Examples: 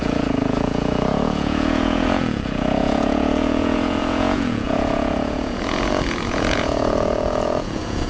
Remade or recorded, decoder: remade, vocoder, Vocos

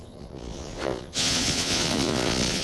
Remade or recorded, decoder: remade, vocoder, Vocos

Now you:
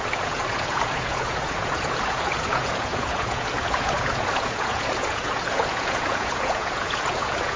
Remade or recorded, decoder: remade, vocoder, Vocos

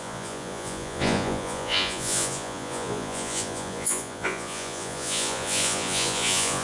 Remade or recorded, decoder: remade, vocoder, Vocos